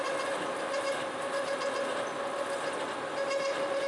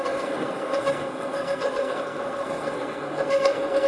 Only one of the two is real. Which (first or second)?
first